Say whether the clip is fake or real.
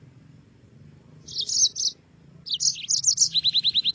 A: real